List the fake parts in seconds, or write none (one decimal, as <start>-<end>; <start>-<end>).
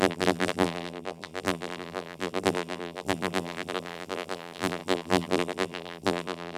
0.0-6.6